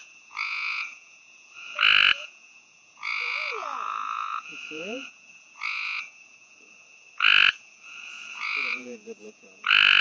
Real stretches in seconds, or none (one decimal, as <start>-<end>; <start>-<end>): none

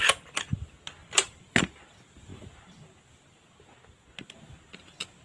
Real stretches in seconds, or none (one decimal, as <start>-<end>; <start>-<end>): 0.0-1.0; 1.8-5.2

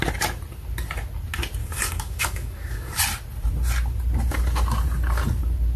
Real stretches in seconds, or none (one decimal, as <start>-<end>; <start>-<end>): 0.0-1.6; 3.0-5.8

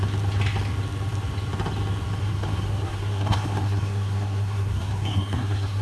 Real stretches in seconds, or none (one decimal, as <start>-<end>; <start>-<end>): 0.0-2.2

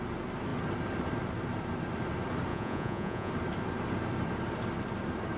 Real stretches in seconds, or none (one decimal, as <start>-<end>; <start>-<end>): 0.0-2.5; 3.3-5.4

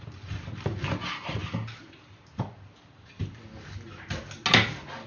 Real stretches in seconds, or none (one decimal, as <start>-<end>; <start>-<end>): 0.0-5.1